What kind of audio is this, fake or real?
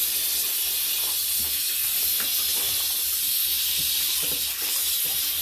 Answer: real